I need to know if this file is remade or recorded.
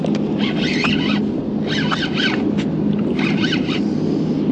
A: recorded